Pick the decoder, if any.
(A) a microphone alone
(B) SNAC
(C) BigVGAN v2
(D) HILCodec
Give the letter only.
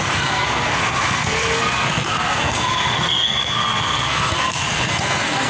B